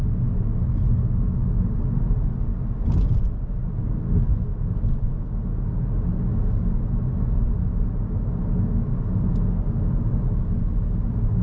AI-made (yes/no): no